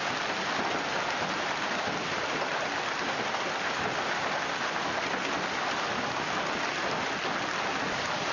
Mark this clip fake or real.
real